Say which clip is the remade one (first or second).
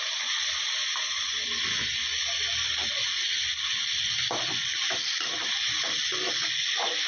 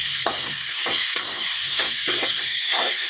second